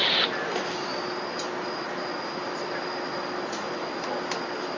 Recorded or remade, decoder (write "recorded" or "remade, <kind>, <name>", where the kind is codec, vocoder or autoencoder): recorded